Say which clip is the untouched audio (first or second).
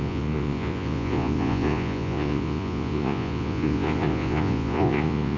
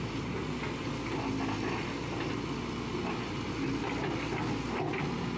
second